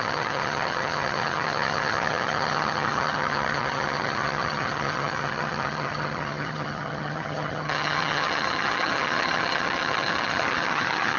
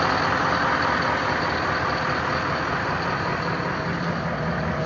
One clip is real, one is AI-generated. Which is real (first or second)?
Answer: second